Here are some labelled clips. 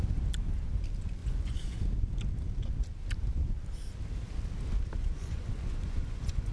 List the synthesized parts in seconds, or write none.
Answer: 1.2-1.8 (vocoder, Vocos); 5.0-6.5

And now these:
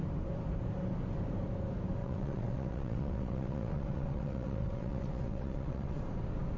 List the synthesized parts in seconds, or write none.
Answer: 2.0-6.0 (vocoder, WaveNeXt)